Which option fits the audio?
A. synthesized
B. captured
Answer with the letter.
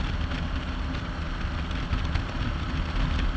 B